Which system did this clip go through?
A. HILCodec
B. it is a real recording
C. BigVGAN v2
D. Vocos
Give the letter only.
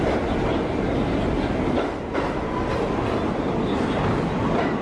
B